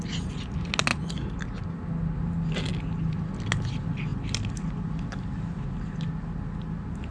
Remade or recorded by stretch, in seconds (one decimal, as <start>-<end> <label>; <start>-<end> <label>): 0.0-7.1 recorded

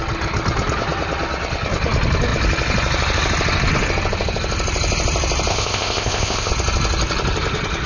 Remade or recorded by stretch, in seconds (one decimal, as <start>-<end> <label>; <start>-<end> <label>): 0.0-5.5 recorded; 5.5-6.5 remade; 6.5-7.9 recorded

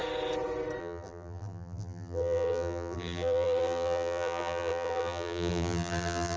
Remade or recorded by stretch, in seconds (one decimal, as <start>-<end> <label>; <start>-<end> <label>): 0.0-0.8 recorded; 0.8-6.4 remade

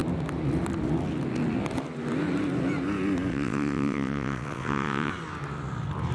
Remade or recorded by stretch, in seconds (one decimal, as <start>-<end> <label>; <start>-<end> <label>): 0.0-3.3 recorded; 3.3-5.1 remade; 5.1-6.1 recorded

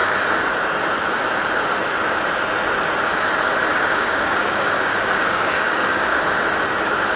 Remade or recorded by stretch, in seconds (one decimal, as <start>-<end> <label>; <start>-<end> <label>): 0.0-3.7 recorded; 3.7-6.2 remade; 6.2-7.2 recorded

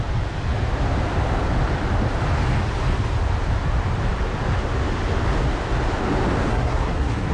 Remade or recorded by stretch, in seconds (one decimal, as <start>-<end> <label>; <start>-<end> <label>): 0.0-6.5 recorded; 6.5-7.3 remade